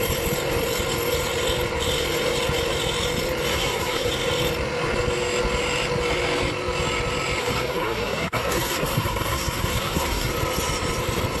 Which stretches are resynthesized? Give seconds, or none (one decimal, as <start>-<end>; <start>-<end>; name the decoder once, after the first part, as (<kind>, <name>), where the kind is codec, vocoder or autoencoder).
3.5-4.1 (codec, SNAC); 7.4-10.3